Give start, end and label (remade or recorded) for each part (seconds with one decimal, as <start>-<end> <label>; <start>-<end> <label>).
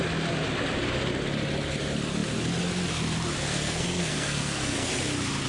0.0-3.5 recorded; 3.5-4.9 remade; 4.9-5.5 recorded